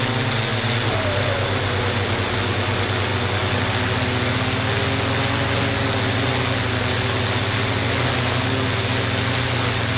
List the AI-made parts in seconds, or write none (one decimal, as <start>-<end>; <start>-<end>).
none